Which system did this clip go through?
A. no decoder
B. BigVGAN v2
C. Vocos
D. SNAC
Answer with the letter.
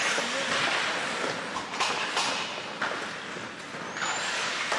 A